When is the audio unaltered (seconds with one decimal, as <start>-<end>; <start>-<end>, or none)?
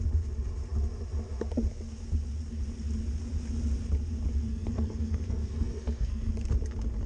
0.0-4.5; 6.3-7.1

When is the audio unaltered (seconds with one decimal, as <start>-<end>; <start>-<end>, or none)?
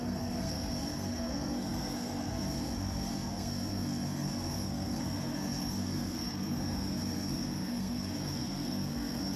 none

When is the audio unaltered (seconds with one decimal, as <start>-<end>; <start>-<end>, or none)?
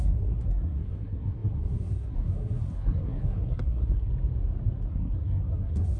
4.1-4.9